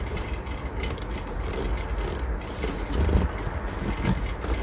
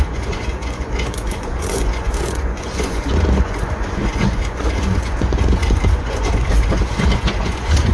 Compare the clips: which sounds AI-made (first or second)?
second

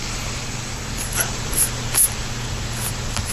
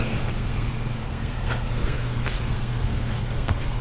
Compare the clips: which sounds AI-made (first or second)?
second